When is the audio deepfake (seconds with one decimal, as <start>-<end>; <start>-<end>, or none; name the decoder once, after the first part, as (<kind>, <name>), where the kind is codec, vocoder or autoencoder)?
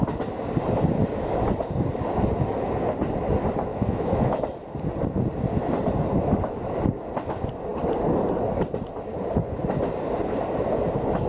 3.7-4.4 (autoencoder, DAC-VAE)